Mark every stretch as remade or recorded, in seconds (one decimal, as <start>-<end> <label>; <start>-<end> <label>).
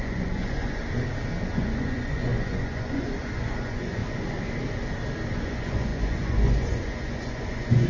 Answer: 0.0-0.8 remade; 0.8-1.5 recorded; 1.5-4.0 remade; 4.0-5.3 recorded; 5.3-7.9 remade